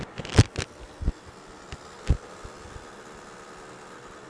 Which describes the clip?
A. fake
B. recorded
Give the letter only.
B